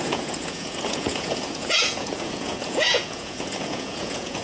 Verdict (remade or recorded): remade